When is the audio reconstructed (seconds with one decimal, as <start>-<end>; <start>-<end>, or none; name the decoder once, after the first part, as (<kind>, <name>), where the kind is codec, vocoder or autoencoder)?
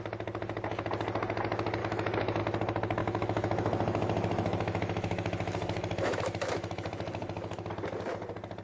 1.8-2.4 (autoencoder, DAC-VAE); 3.0-7.7